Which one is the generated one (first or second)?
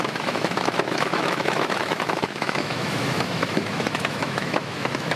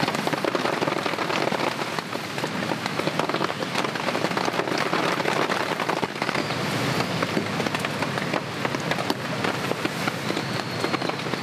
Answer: first